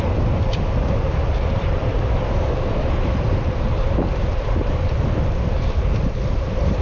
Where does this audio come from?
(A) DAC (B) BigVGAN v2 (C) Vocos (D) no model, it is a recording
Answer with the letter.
B